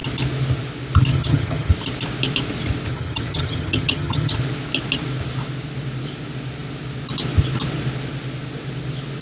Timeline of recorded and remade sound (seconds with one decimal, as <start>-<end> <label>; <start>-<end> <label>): 0.0-1.1 recorded; 1.1-1.7 remade; 1.7-2.9 recorded; 2.9-4.4 remade; 4.4-9.2 recorded

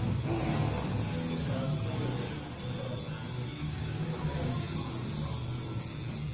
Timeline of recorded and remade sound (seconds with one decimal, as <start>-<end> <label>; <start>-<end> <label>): 0.0-3.5 recorded; 3.5-4.6 remade; 4.6-6.3 recorded

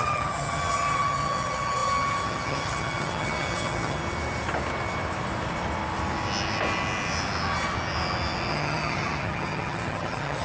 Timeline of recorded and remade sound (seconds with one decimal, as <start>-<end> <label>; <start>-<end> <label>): 0.0-4.0 remade; 4.0-8.5 recorded; 8.5-10.4 remade

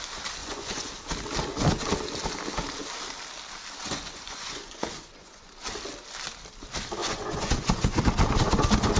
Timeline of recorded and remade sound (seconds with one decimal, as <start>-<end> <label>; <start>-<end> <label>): 0.0-0.4 recorded; 0.4-0.9 remade; 0.9-3.8 recorded; 3.8-5.5 remade; 5.5-7.0 recorded; 7.0-8.0 remade; 8.0-9.0 recorded